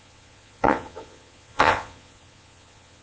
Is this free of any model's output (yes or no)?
no